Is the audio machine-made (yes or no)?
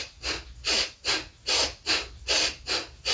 no